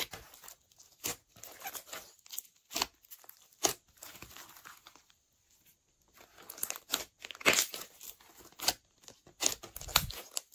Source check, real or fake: real